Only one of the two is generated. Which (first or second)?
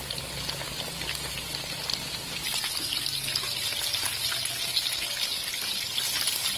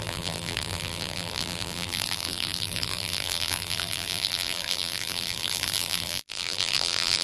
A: second